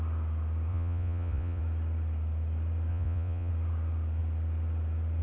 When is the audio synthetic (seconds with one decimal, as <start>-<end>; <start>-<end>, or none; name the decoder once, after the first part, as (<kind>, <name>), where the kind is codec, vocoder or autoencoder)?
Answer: 0.7-1.6 (vocoder, Vocos); 2.9-3.5